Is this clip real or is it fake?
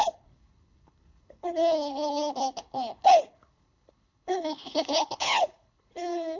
fake